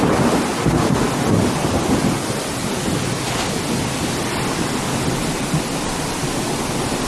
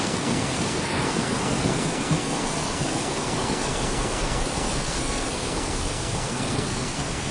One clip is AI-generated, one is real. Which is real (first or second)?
first